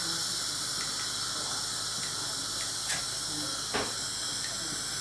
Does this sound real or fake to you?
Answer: real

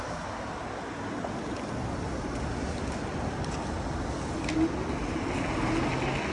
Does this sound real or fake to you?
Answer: real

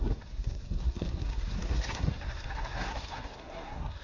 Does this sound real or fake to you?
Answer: fake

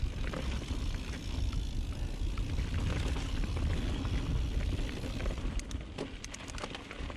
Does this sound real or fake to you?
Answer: real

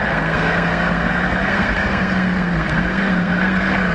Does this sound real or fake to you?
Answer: fake